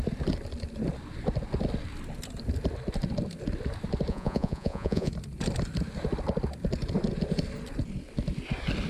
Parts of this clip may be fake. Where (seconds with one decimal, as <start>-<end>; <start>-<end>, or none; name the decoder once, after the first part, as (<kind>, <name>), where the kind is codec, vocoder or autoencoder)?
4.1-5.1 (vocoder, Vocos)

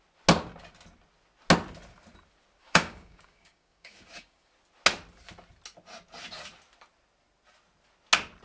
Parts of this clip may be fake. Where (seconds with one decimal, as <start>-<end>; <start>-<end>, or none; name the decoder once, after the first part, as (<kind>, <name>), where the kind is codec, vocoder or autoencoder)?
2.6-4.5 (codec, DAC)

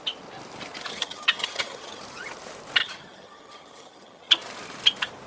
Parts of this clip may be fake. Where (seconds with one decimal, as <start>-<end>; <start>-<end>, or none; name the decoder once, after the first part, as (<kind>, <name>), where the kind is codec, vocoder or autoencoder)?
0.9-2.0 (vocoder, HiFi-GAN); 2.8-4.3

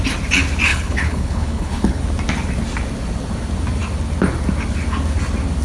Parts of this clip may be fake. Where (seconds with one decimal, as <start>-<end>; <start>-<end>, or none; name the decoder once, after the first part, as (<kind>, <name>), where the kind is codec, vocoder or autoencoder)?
0.7-2.0 (codec, HILCodec)

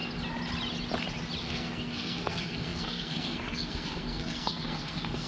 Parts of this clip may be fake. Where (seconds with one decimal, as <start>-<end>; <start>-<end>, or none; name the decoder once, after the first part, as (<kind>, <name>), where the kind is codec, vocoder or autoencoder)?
1.4-5.3 (codec, SNAC)

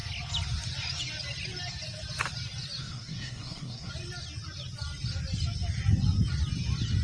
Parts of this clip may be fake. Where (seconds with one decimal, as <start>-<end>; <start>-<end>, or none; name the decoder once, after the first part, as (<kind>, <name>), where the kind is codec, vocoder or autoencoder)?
2.8-3.9 (codec, SNAC)

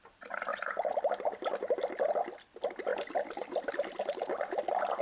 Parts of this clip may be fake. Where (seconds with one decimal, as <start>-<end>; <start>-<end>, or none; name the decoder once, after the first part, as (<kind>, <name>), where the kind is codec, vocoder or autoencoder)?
none